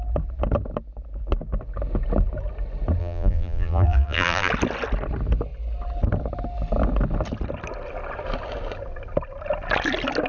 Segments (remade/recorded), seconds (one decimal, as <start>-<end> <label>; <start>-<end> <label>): 0.0-3.0 recorded; 3.0-4.5 remade; 4.5-10.3 recorded